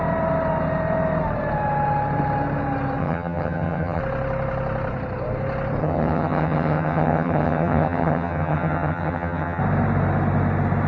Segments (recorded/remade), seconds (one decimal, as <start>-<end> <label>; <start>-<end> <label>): 0.0-3.0 recorded; 3.0-4.0 remade; 4.0-5.8 recorded; 5.8-9.6 remade; 9.6-10.9 recorded